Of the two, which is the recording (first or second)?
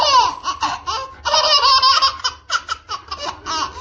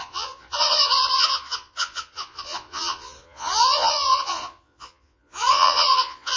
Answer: first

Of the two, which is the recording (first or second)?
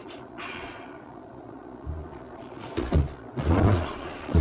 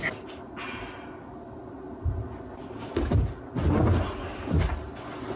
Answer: second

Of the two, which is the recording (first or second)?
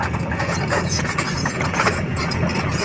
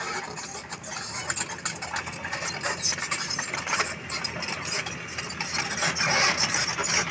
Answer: second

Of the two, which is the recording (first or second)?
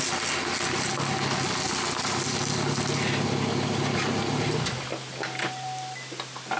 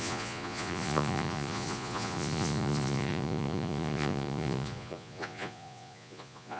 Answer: first